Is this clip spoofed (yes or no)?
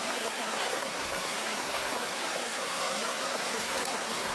yes